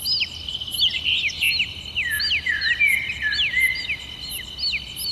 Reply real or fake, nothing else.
real